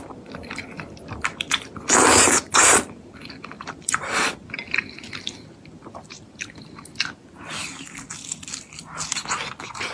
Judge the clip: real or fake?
real